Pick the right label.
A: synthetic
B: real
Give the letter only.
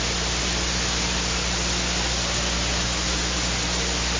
B